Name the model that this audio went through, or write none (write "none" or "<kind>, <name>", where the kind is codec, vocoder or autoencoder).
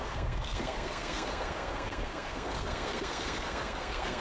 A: codec, SNAC